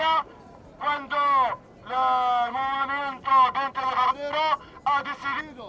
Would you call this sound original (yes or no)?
yes